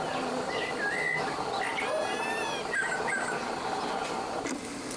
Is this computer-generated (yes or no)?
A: no